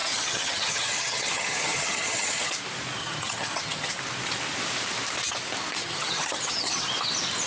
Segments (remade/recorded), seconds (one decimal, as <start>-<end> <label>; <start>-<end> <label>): 0.0-2.5 remade; 2.5-3.0 recorded; 3.0-3.9 remade; 3.9-5.8 recorded; 5.8-6.9 remade; 6.9-7.5 recorded